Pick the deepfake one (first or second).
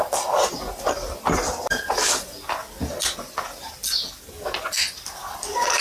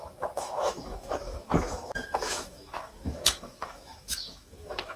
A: second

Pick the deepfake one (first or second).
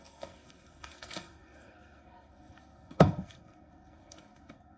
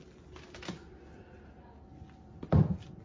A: first